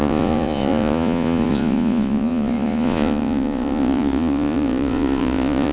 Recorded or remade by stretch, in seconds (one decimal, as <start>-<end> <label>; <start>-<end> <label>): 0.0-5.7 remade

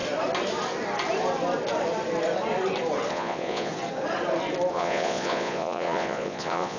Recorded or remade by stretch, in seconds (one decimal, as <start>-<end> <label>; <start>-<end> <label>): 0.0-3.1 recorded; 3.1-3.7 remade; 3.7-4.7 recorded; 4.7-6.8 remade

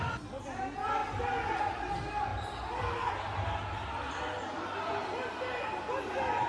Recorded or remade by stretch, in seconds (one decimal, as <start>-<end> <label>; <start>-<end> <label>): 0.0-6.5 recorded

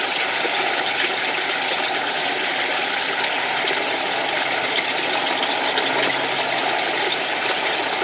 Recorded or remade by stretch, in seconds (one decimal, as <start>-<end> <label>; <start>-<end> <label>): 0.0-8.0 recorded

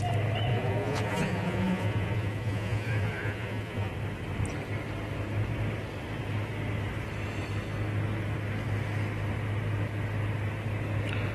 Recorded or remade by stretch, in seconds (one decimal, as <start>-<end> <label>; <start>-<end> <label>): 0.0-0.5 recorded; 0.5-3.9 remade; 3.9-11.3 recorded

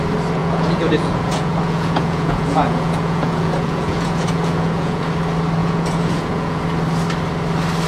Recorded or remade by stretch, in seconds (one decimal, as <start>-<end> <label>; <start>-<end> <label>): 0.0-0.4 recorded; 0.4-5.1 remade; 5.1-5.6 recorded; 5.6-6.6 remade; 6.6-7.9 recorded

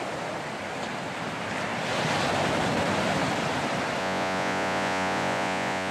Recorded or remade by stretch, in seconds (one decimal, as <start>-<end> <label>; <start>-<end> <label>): 0.0-4.0 recorded; 4.0-5.9 remade

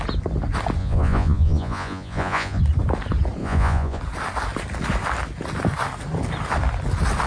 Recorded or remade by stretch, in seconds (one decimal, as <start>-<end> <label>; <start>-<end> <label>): 0.0-0.8 recorded; 0.8-2.6 remade; 2.6-3.4 recorded; 3.4-4.0 remade; 4.0-7.3 recorded